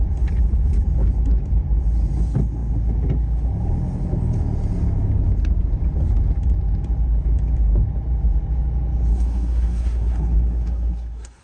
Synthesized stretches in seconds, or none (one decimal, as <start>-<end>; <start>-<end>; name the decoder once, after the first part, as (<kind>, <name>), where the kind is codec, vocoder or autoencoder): 9.1-11.4 (codec, SNAC)